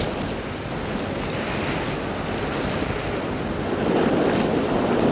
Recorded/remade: recorded